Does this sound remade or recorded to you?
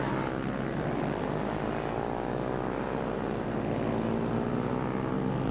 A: recorded